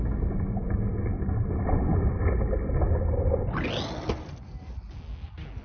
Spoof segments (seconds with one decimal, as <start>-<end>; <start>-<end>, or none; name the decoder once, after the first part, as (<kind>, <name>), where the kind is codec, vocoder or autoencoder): none